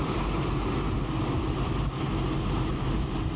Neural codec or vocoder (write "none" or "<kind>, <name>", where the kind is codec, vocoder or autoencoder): none